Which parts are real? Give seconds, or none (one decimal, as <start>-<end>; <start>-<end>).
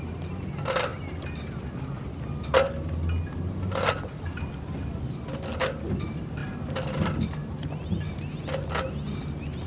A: 0.0-9.7